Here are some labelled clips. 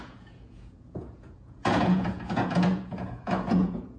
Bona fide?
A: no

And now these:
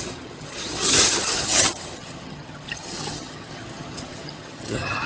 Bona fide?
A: no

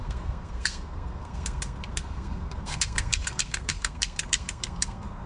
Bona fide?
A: no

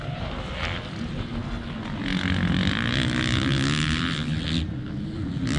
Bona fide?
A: yes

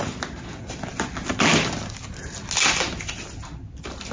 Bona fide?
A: yes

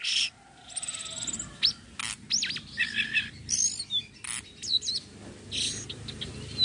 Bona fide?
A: yes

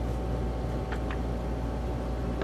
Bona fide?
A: yes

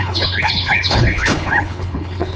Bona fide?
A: no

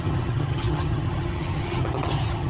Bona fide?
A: no